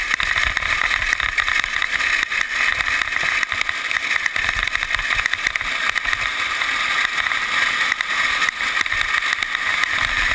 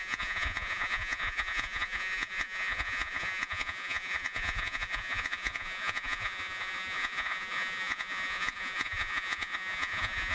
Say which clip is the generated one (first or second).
second